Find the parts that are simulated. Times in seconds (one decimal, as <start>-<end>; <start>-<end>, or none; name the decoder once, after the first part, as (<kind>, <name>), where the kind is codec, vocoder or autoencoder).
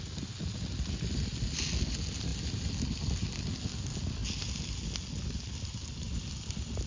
none